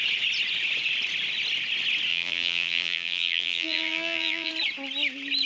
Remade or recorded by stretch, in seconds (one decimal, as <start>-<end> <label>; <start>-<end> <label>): 0.0-2.1 recorded; 2.1-4.5 remade; 4.5-5.5 recorded